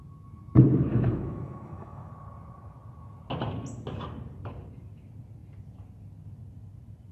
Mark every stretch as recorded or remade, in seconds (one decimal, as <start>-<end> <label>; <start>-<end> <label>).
0.0-0.9 recorded; 0.9-2.1 remade; 2.1-7.1 recorded